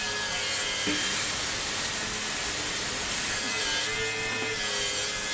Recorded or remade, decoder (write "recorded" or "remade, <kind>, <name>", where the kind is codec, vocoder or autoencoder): recorded